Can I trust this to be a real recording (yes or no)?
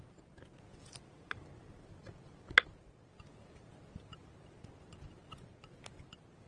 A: yes